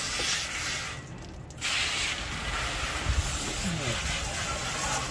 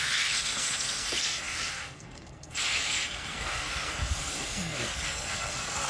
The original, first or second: first